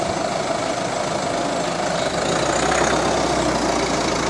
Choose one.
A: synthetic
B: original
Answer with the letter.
B